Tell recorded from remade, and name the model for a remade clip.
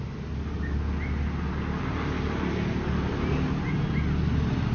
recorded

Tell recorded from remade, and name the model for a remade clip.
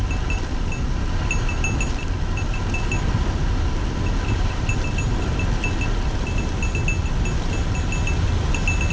recorded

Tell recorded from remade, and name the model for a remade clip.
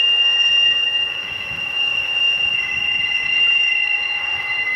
remade, autoencoder, DAC-VAE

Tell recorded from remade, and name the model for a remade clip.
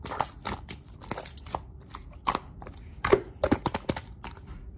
recorded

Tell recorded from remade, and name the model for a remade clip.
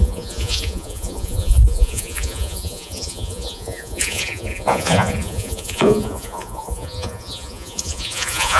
remade, vocoder, Vocos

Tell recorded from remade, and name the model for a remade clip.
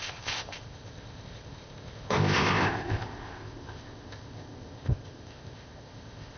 remade, codec, ZipCodec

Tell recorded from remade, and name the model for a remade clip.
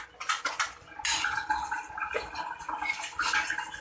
recorded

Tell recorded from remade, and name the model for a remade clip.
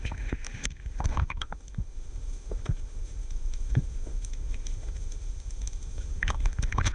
remade, autoencoder, DAC-VAE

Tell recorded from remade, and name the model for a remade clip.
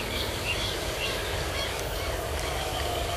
remade, codec, DAC